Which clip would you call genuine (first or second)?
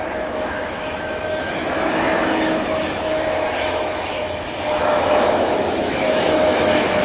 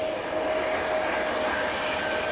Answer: second